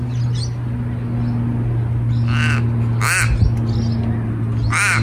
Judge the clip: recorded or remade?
recorded